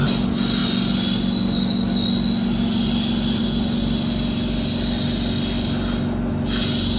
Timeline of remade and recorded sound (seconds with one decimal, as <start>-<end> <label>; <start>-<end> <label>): 0.0-7.0 recorded